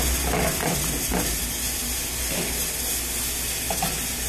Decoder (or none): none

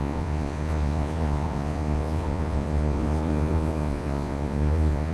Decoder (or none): vocoder, Vocos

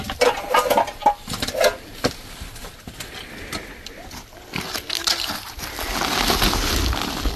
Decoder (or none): none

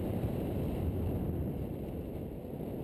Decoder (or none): none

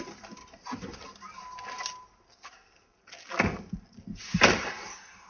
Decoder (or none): none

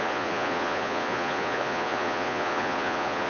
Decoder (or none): vocoder, Vocos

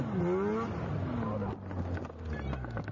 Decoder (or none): none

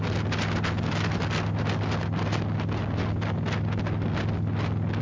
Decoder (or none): none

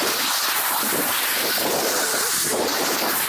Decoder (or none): none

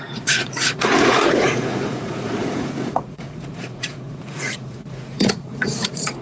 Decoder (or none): vocoder, Vocos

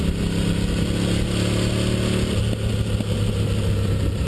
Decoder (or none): none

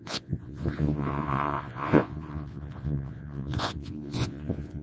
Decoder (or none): vocoder, Vocos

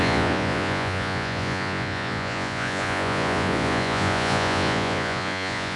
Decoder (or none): vocoder, Vocos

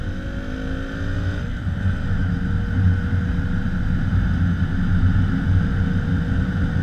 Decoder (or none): none